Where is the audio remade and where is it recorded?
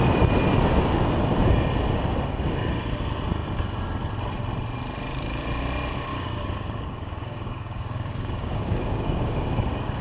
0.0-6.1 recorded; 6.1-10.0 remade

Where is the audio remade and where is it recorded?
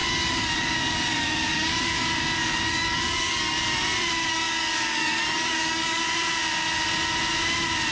0.0-3.6 remade; 3.6-4.3 recorded; 4.3-6.0 remade; 6.0-7.9 recorded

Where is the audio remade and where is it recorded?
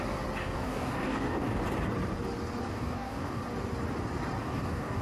0.0-0.4 recorded; 0.4-1.6 remade; 1.6-2.7 recorded; 2.7-3.4 remade; 3.4-4.4 recorded; 4.4-5.0 remade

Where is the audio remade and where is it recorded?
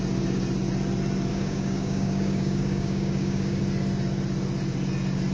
0.0-1.3 recorded; 1.3-3.6 remade; 3.6-5.3 recorded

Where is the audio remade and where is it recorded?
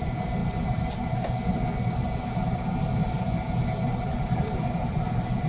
0.0-5.5 recorded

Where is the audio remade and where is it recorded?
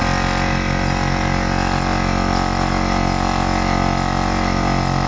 0.0-5.1 recorded